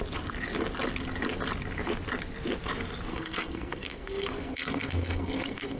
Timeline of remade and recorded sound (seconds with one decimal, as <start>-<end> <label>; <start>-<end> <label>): 0.0-3.1 recorded; 3.1-5.8 remade